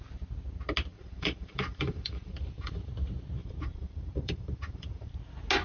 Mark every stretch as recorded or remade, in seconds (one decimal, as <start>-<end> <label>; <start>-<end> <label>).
0.0-0.9 recorded; 0.9-2.9 remade; 2.9-3.4 recorded; 3.4-5.1 remade; 5.1-5.6 recorded